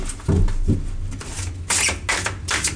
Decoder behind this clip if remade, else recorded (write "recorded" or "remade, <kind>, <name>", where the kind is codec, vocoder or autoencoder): recorded